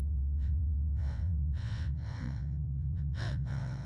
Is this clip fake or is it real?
fake